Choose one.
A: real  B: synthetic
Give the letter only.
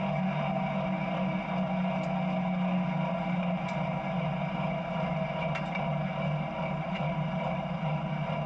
A